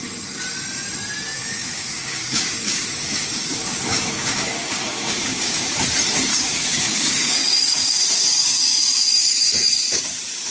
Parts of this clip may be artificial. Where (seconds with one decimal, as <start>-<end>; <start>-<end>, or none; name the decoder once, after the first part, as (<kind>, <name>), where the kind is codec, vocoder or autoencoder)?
1.4-5.7 (codec, DAC); 6.3-10.0